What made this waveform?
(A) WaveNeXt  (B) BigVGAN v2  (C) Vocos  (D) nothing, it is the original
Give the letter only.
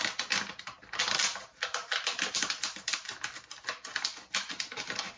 D